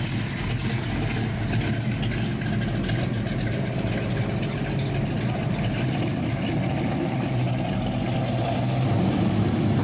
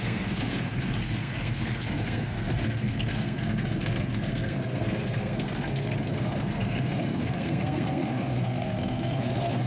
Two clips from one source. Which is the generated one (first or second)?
second